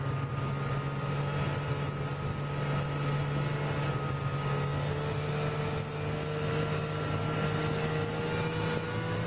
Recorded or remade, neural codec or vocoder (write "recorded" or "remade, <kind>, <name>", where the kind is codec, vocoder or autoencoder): recorded